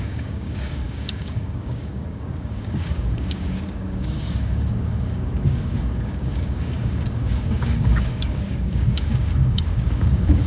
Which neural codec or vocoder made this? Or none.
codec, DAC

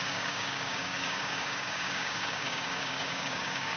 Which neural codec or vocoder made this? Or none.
codec, DAC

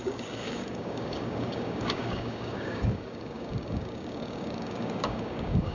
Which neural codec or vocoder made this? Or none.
codec, DAC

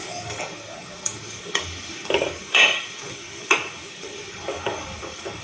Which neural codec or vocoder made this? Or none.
codec, DAC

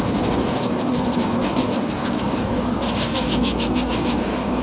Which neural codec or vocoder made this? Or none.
codec, DAC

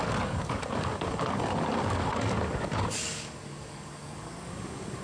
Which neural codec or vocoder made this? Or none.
codec, DAC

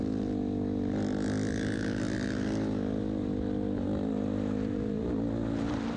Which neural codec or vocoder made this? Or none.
none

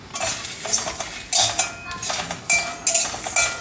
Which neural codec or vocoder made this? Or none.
none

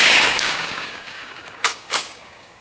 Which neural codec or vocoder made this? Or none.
codec, DAC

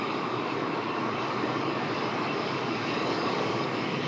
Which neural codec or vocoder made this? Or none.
codec, DAC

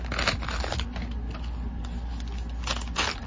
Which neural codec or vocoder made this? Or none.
none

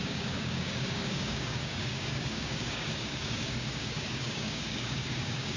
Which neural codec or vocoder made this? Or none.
codec, DAC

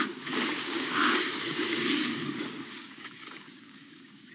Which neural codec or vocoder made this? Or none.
codec, DAC